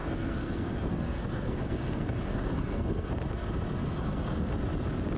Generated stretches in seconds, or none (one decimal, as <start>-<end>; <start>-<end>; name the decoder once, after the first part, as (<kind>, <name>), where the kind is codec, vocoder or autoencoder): 0.0-3.1 (codec, SNAC); 3.8-4.5

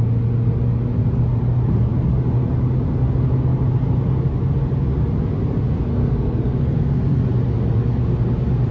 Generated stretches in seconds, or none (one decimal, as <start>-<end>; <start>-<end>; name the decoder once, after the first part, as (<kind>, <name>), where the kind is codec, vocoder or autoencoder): 5.9-7.2 (codec, SNAC)

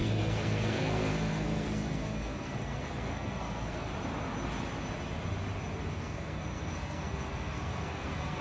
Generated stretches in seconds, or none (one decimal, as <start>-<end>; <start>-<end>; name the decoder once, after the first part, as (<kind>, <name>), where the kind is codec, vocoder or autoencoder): 0.0-3.9 (codec, SNAC); 5.9-8.4

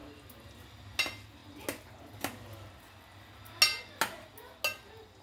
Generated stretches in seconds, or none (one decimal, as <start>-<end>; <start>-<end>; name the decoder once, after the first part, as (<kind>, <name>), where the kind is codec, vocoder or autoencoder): none